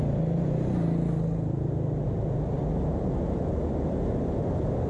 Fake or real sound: real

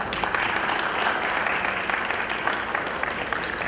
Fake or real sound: real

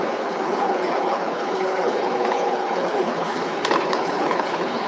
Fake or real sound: fake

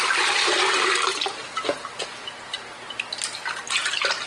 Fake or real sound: real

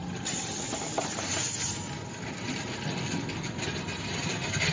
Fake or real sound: real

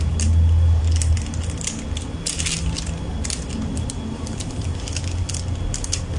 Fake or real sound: real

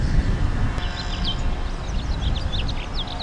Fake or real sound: real